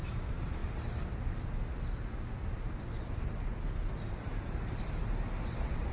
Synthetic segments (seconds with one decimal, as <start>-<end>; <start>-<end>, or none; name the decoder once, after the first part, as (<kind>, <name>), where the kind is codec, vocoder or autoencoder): none